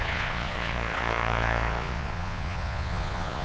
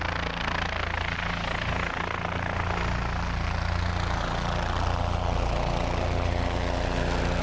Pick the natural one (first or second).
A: second